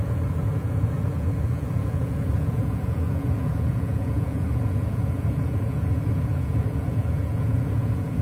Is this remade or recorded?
remade